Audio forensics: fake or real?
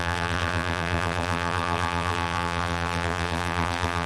fake